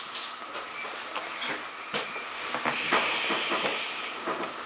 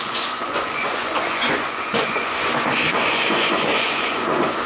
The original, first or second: first